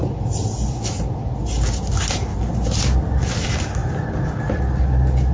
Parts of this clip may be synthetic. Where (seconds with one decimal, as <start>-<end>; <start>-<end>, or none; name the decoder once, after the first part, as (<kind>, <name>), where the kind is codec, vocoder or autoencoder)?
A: none